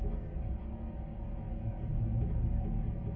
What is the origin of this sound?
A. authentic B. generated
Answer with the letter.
A